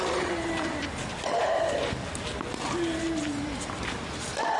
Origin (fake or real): real